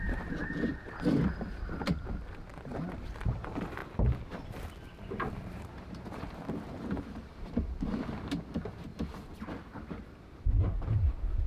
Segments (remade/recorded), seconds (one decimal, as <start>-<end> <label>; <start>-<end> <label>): 0.0-0.7 remade; 0.7-2.5 recorded; 2.5-3.8 remade; 3.8-5.3 recorded; 5.3-8.9 remade; 8.9-10.4 recorded; 10.4-11.5 remade